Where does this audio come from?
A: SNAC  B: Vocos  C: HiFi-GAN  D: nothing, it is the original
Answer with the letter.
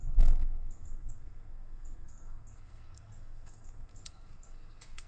A